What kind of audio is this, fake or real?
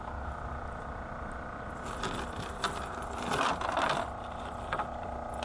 real